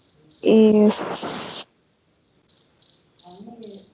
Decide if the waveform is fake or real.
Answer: real